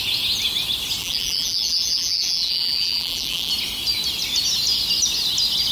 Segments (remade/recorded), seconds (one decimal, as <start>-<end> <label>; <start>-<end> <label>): 0.0-1.0 recorded; 1.0-3.5 remade; 3.5-5.7 recorded